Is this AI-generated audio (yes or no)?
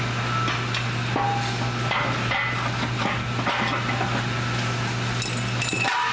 no